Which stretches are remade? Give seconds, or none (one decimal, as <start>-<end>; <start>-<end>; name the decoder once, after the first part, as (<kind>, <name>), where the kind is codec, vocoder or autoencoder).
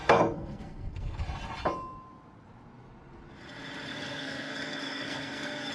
0.0-1.2 (codec, SNAC); 3.9-5.7